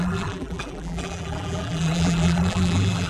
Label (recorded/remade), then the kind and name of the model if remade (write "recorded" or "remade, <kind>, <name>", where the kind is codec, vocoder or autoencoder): remade, vocoder, BigVGAN v2